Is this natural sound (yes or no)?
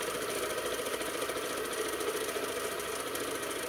yes